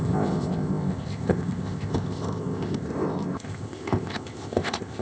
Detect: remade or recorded remade